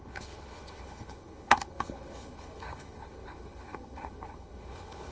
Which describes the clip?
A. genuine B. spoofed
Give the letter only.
B